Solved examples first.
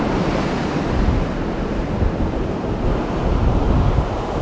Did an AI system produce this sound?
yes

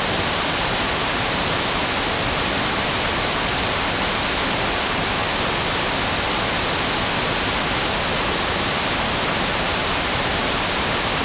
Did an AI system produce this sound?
no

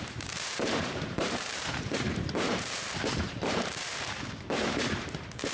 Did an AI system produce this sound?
yes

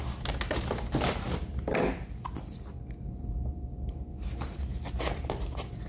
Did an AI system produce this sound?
no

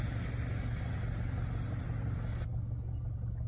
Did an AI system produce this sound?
no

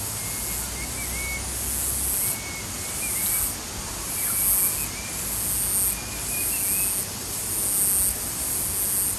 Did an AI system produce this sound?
no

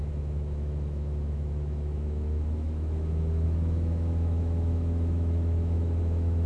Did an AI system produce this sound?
yes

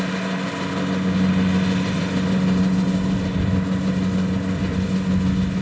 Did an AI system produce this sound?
no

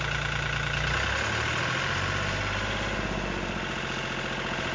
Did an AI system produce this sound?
no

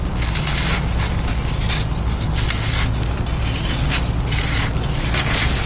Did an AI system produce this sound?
no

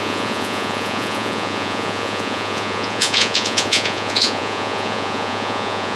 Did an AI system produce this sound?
yes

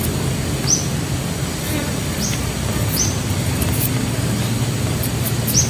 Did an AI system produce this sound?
no